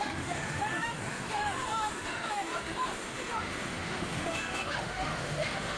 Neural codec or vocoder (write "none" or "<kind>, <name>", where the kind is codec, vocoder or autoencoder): autoencoder, DAC-VAE